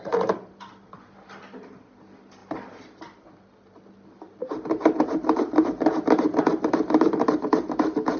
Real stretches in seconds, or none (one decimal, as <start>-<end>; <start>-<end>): 0.0-2.4; 3.0-4.4; 7.5-8.2